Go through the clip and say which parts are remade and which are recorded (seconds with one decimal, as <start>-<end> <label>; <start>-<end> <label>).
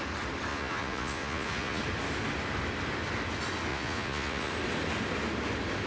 0.0-0.5 recorded; 0.5-1.8 remade; 1.8-3.7 recorded; 3.7-4.5 remade; 4.5-5.9 recorded